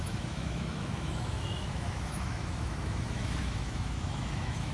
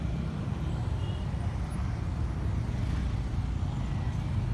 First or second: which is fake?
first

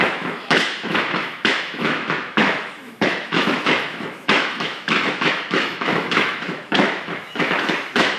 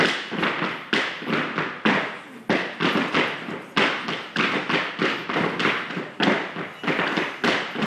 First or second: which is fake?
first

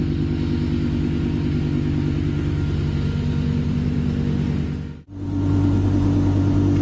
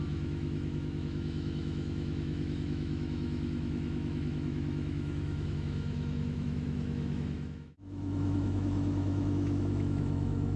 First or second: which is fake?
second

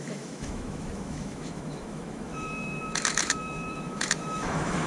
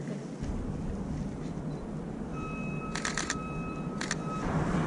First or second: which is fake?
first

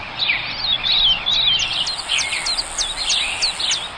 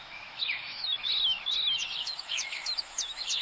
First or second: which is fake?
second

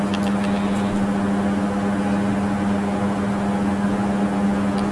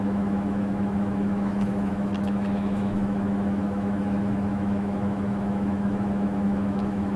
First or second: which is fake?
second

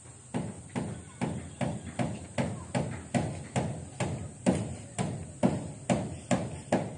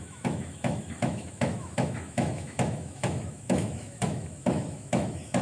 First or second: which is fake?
second